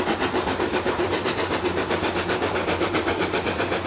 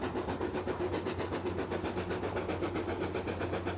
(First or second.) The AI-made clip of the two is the first